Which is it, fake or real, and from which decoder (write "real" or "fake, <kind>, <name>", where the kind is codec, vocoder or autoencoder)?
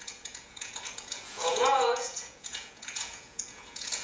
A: fake, vocoder, Vocos